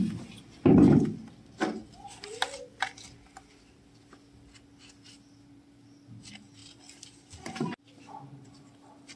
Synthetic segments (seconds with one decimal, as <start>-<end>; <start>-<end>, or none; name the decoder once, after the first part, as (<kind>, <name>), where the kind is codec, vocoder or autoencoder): none

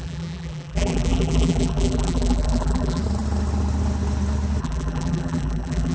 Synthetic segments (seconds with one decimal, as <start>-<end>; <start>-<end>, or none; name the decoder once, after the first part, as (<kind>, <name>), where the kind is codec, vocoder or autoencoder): 0.0-3.0 (vocoder, BigVGAN v2); 4.6-5.9

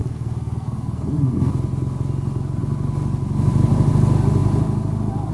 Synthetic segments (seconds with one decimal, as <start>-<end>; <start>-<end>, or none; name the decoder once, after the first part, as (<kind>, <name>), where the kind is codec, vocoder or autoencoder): 0.0-1.5 (codec, SNAC)

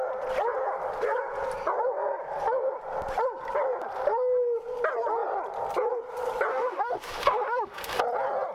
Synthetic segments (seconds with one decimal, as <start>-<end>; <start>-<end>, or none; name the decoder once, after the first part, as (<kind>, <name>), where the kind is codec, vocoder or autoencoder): 6.5-8.0 (autoencoder, DAC-VAE)

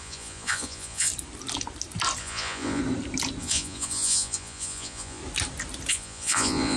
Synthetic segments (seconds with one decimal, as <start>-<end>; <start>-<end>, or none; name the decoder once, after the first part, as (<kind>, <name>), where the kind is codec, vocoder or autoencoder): 0.0-1.1 (vocoder, Vocos); 2.2-2.8; 3.4-5.2; 5.9-6.8

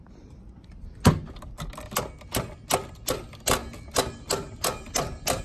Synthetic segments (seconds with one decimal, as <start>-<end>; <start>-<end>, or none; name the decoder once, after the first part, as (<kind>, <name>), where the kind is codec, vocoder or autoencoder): none

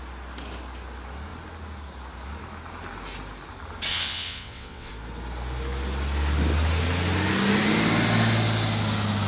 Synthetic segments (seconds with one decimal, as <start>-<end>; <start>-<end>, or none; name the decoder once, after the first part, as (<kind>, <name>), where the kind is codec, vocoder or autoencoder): 3.9-4.9 (vocoder, WaveNeXt)